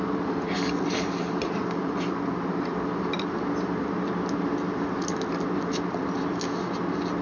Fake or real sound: real